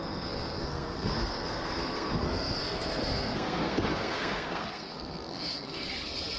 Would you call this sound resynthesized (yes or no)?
yes